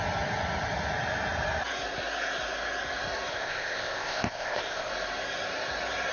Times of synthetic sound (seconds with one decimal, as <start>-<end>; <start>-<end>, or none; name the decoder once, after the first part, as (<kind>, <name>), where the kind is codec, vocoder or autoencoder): 3.3-4.9 (codec, ZipCodec)